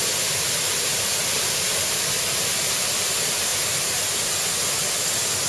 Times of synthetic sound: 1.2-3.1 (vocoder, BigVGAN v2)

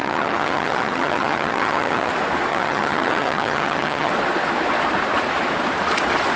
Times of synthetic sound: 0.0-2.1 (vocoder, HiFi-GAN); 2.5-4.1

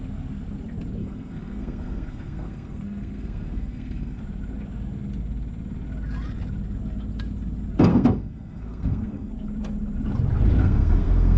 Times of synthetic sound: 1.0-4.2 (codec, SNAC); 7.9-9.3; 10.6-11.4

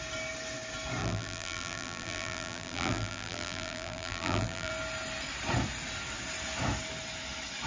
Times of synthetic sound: 1.0-4.7 (vocoder, BigVGAN v2)

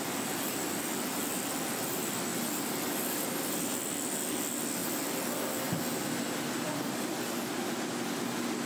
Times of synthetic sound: 2.3-3.9 (vocoder, BigVGAN v2)

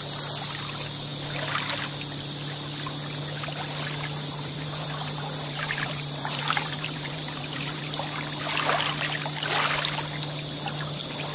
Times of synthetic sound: 4.3-7.8 (vocoder, BigVGAN v2)